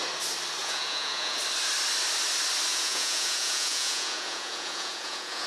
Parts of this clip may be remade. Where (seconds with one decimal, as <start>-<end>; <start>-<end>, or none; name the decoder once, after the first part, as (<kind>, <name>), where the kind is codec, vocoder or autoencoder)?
0.6-1.4 (vocoder, Vocos); 2.7-5.5